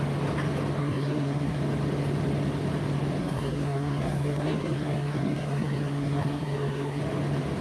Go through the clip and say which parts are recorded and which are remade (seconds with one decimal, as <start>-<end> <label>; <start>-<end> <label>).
0.0-0.8 recorded; 0.8-1.6 remade; 1.6-3.2 recorded; 3.2-7.0 remade; 7.0-7.6 recorded